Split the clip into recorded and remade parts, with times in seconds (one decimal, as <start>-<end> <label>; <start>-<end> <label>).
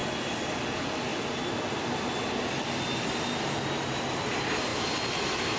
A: 0.0-5.6 recorded